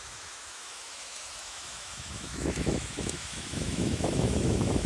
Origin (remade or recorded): remade